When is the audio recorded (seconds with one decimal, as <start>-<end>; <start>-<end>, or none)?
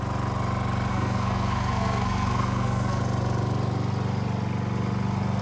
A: 0.0-0.9; 3.0-5.4